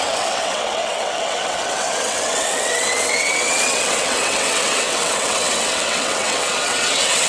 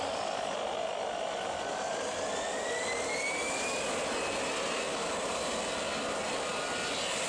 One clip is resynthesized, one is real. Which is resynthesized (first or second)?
first